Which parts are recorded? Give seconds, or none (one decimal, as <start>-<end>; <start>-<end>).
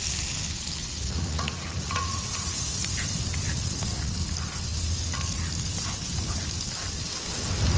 0.0-0.8; 2.9-3.5; 4.1-7.8